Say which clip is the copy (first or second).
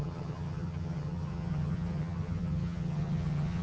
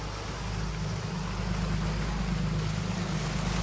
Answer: first